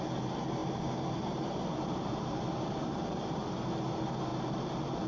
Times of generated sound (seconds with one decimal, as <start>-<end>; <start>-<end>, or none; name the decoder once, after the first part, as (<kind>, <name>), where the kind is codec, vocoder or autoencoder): 0.6-3.7 (vocoder, BigVGAN v2); 4.3-5.1